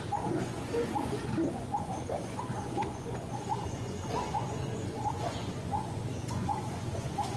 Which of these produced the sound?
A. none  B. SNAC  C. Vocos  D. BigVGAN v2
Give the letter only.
C